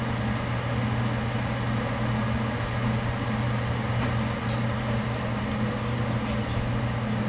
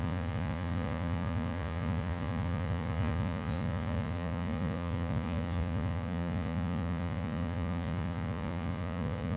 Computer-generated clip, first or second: second